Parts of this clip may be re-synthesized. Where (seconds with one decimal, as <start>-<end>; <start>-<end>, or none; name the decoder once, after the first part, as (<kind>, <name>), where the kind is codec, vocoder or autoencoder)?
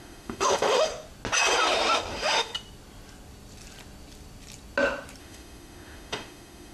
0.0-0.9 (autoencoder, DAC-VAE); 2.1-2.5; 5.2-6.7